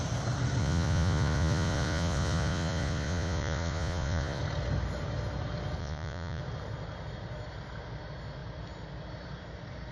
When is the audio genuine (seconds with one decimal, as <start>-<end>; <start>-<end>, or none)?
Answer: 0.0-0.6; 4.4-5.8; 6.4-9.9